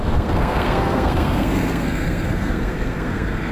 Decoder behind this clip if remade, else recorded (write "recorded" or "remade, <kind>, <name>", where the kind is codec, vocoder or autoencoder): remade, codec, SNAC